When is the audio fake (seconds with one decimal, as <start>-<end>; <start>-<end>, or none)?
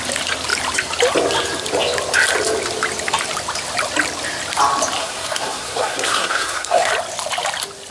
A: 5.0-6.9